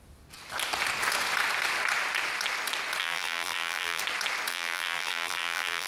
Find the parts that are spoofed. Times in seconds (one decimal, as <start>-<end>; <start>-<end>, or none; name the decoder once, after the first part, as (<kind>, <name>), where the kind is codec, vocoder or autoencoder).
3.0-4.0 (vocoder, BigVGAN v2); 4.5-5.9